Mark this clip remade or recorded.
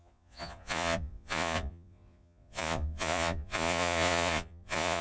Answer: remade